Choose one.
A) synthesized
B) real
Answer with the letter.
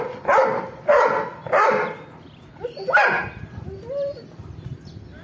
B